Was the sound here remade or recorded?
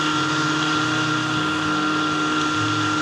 recorded